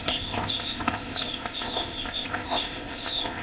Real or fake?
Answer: fake